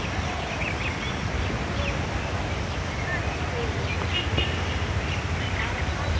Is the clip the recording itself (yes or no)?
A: yes